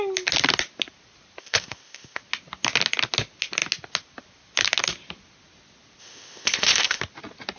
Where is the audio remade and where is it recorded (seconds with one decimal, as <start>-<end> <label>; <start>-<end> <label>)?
0.0-1.4 recorded; 1.4-2.2 remade; 2.2-6.0 recorded; 6.0-7.0 remade; 7.0-7.6 recorded